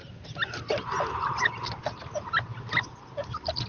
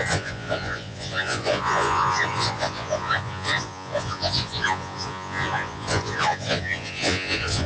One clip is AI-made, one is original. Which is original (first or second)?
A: first